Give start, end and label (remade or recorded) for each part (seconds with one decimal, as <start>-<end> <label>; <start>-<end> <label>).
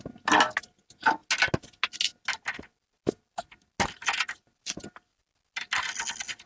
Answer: 0.0-6.5 recorded